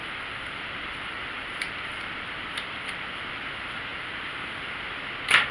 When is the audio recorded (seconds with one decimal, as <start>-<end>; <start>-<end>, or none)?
3.3-3.9; 4.8-5.5